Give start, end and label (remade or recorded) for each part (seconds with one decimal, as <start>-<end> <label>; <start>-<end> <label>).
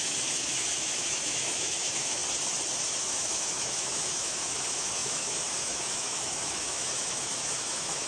0.0-2.2 remade; 2.2-3.0 recorded; 3.0-8.1 remade